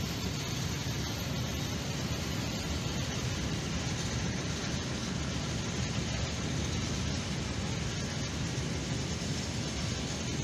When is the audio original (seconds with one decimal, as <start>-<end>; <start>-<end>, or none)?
5.0-9.5